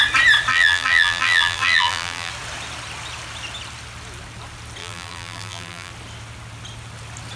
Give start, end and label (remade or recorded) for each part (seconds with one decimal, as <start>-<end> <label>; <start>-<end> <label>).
0.0-0.5 recorded; 0.5-2.3 remade; 2.3-4.8 recorded; 4.8-5.9 remade; 5.9-7.4 recorded

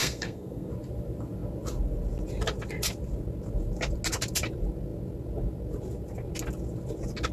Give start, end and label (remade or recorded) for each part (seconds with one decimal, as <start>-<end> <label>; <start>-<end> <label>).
0.0-0.7 remade; 0.7-7.3 recorded